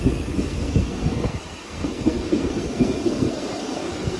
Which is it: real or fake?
fake